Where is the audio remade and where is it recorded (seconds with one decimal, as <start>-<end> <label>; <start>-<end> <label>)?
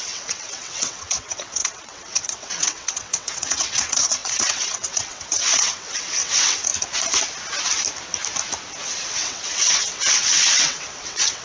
0.0-6.7 remade; 6.7-9.1 recorded; 9.1-11.4 remade